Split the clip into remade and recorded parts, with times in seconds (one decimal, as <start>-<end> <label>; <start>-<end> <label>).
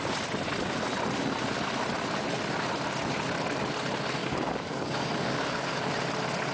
0.0-4.2 recorded; 4.2-5.9 remade; 5.9-6.5 recorded